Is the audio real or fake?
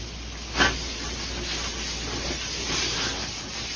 real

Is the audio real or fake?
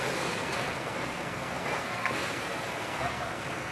fake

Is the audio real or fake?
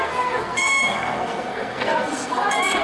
fake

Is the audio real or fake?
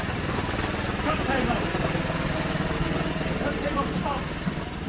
real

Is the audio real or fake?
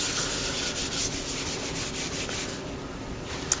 real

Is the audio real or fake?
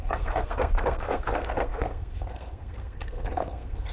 fake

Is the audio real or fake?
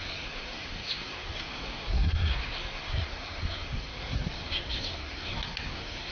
fake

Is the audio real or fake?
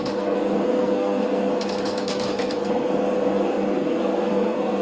fake